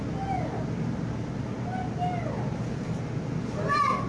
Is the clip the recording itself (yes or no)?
yes